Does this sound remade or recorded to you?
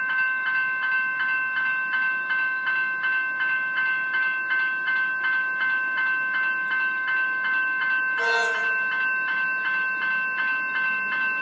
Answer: recorded